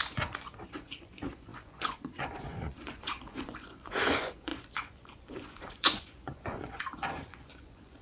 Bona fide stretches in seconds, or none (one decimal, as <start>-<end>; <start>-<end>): none